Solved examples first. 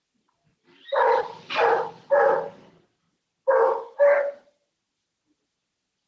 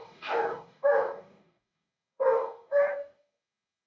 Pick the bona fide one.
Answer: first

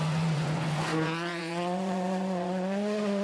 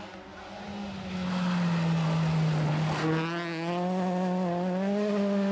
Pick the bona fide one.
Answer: second